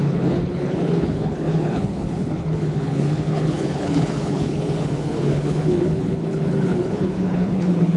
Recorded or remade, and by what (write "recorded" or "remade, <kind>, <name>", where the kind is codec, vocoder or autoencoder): remade, codec, HILCodec